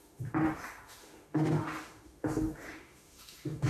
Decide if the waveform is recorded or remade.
remade